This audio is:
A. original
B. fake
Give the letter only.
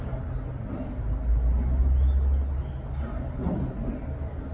A